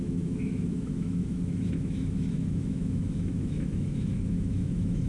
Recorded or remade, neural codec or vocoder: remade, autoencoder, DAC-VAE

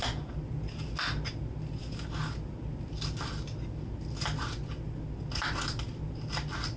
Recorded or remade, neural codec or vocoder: recorded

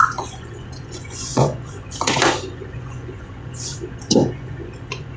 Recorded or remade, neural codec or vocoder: remade, vocoder, Vocos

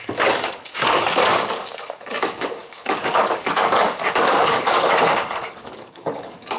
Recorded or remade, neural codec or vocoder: remade, codec, DAC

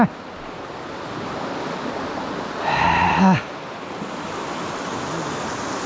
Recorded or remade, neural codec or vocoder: recorded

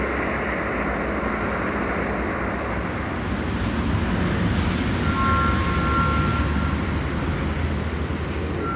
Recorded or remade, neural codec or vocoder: recorded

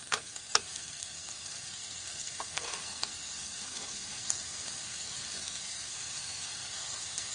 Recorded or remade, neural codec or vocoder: remade, codec, SNAC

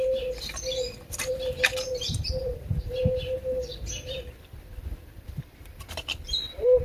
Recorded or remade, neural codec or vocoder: remade, vocoder, BigVGAN v2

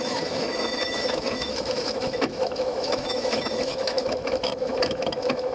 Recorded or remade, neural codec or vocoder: remade, autoencoder, DAC-VAE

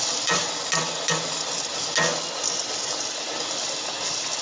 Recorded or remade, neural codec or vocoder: recorded